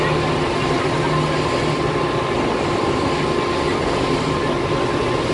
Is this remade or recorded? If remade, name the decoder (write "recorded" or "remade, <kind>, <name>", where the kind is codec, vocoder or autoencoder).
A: recorded